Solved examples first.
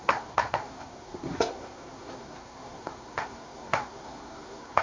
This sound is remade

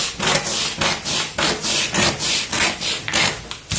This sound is recorded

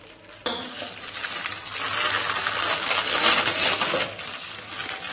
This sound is recorded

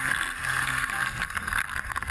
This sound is remade